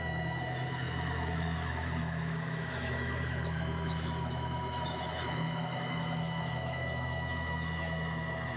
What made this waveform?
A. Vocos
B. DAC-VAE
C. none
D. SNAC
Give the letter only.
B